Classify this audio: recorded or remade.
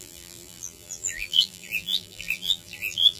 remade